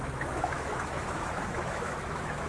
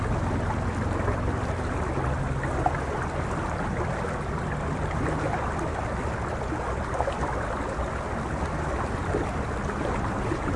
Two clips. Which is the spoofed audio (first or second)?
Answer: first